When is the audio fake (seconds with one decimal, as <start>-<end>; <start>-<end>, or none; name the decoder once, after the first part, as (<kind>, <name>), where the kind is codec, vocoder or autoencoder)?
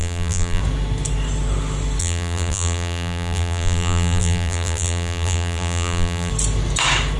0.0-0.6 (vocoder, BigVGAN v2); 2.0-6.3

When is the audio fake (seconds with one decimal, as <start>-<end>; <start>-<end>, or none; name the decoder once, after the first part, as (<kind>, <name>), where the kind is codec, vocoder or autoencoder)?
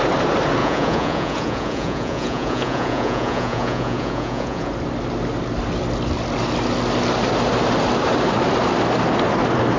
0.6-4.7 (vocoder, Vocos)